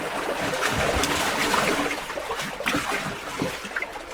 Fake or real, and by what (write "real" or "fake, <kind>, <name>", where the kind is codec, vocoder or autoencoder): real